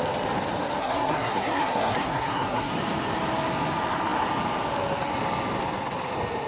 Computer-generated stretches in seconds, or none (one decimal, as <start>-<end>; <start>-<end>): 0.8-2.7